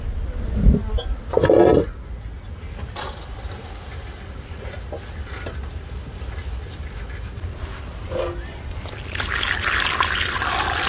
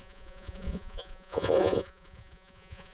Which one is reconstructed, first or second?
second